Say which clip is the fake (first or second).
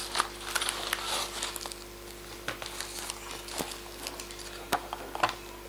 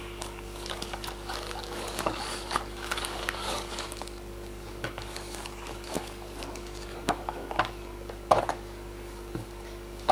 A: second